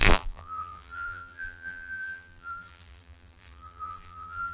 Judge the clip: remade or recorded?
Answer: remade